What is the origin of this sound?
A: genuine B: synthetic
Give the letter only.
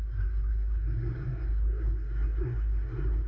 B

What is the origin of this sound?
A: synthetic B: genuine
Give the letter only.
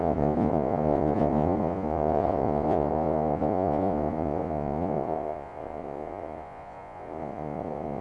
A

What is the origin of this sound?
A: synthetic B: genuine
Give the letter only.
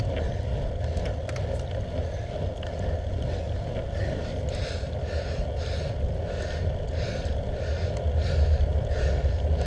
B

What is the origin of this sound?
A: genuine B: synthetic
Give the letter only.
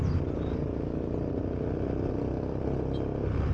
A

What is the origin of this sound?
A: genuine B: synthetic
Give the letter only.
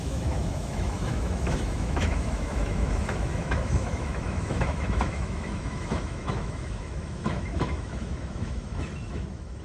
B